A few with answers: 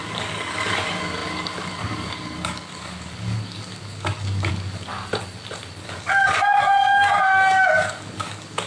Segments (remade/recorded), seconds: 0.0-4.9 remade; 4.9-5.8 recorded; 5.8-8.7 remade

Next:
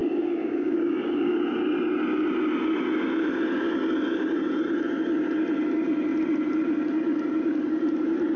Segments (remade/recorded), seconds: 0.0-1.4 remade; 1.4-8.4 recorded

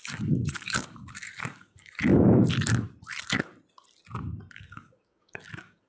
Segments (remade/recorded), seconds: 0.0-2.1 remade; 2.1-4.5 recorded; 4.5-5.9 remade

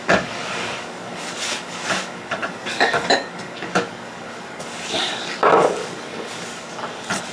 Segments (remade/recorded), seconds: 0.0-7.3 remade

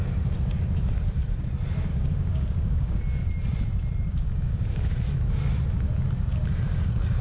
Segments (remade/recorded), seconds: 0.0-1.9 recorded; 1.9-3.0 remade; 3.0-4.1 recorded; 4.1-4.9 remade; 4.9-7.2 recorded

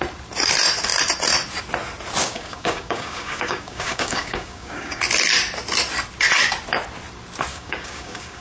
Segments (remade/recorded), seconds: 0.0-2.2 recorded; 2.2-5.0 remade; 5.0-7.5 recorded; 7.5-8.4 remade